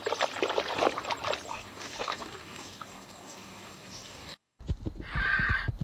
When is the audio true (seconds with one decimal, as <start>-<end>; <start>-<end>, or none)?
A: 0.0-1.5; 4.6-5.8

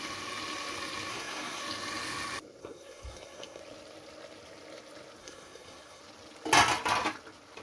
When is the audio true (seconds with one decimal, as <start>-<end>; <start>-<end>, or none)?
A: 0.0-1.1; 1.6-2.6; 3.6-5.2; 6.0-7.6

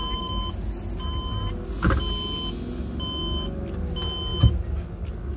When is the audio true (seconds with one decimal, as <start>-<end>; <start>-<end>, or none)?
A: 0.0-5.4

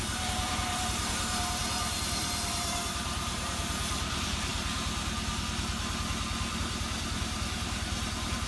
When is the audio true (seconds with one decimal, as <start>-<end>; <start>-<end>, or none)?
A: 4.5-6.5

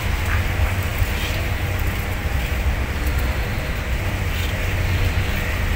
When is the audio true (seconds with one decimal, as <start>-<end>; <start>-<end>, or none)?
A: 0.0-5.8

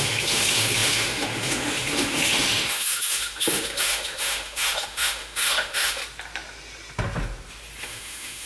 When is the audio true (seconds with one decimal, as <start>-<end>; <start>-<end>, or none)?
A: 6.0-7.8